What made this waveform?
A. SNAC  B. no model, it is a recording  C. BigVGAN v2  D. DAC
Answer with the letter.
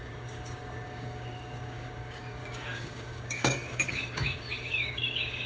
D